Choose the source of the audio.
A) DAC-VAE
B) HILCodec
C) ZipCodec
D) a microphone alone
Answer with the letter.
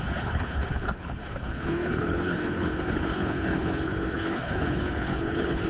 B